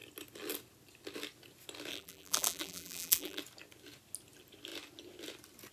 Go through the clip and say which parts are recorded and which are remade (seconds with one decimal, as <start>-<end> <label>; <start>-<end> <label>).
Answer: 0.0-1.9 recorded; 1.9-3.4 remade; 3.4-5.7 recorded